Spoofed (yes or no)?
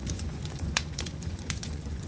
yes